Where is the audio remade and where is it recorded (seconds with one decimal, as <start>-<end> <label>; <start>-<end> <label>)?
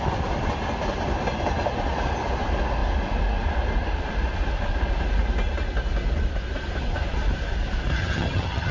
0.0-7.9 recorded; 7.9-8.7 remade